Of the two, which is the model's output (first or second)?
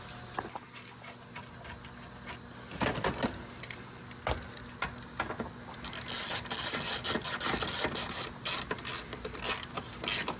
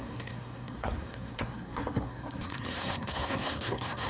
second